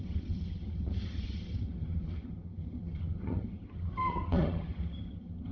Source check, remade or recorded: remade